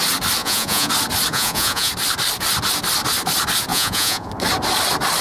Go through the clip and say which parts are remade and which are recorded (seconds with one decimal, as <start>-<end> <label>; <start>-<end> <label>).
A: 0.0-0.4 recorded; 0.4-0.9 remade; 0.9-1.3 recorded; 1.3-1.9 remade; 1.9-3.7 recorded; 3.7-4.3 remade; 4.3-5.2 recorded